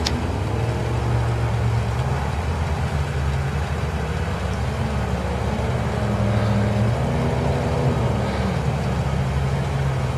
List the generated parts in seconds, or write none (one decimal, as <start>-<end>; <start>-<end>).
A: none